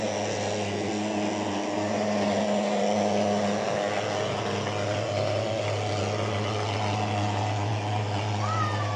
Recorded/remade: recorded